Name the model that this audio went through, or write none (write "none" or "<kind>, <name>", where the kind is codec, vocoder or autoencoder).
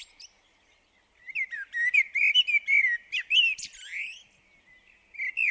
none